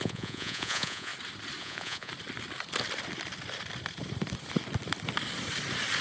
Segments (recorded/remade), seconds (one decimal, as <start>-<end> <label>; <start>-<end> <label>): 0.0-1.1 remade; 1.1-1.6 recorded; 1.6-2.1 remade; 2.1-6.0 recorded